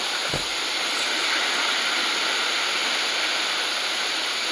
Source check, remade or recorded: recorded